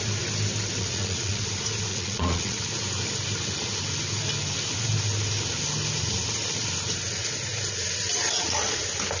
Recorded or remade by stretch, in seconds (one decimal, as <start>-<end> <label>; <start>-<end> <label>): 0.0-0.8 recorded; 0.8-1.4 remade; 1.4-1.9 recorded; 1.9-2.6 remade; 2.6-9.2 recorded